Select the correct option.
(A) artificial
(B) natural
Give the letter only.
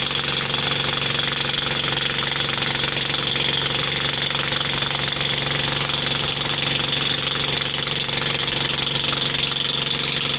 B